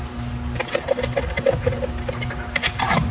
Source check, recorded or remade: remade